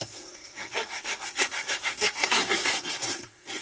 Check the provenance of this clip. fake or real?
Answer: fake